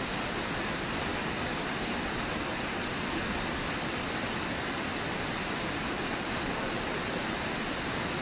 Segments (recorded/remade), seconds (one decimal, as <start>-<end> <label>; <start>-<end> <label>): 0.0-8.2 recorded